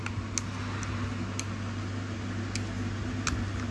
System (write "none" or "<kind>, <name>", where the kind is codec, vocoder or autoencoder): none